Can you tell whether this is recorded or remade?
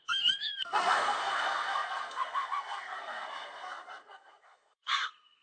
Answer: remade